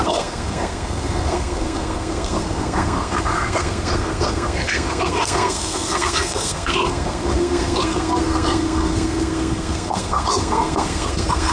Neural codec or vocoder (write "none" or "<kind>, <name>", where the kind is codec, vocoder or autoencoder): codec, SNAC